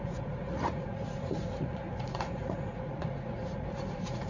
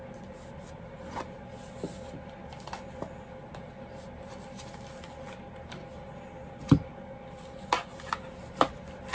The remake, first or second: first